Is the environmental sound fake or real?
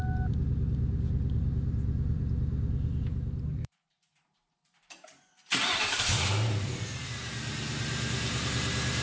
fake